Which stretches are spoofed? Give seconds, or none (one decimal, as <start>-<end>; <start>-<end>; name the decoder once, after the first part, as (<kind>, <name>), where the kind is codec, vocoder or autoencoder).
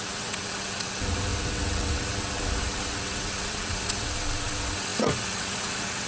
0.0-6.1 (vocoder, WaveNeXt)